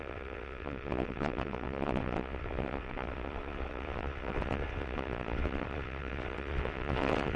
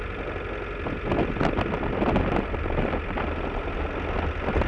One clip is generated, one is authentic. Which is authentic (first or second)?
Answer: second